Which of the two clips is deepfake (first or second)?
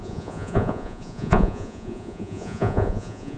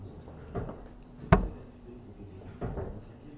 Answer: first